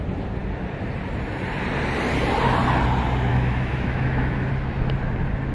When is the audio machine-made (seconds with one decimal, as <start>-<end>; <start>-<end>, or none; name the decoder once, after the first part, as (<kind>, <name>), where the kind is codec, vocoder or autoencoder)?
3.3-4.5 (autoencoder, DAC-VAE)